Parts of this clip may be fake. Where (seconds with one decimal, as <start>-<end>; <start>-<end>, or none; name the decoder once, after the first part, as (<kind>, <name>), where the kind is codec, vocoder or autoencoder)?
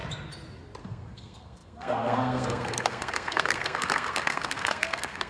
0.8-5.3 (codec, SNAC)